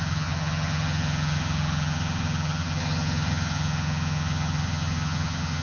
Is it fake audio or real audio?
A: fake